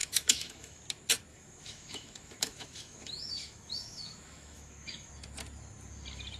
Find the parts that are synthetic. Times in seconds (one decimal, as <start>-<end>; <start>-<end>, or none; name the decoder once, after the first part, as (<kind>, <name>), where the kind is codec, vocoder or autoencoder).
0.0-0.8 (autoencoder, DAC-VAE); 1.3-5.1